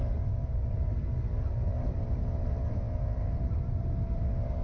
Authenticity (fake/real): real